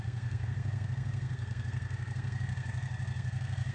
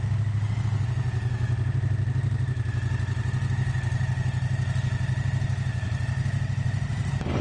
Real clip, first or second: second